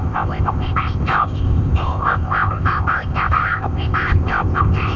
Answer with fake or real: fake